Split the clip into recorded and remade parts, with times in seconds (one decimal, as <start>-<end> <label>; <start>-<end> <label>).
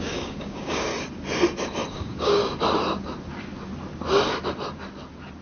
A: 0.0-0.9 remade; 0.9-1.9 recorded; 1.9-2.4 remade; 2.4-5.4 recorded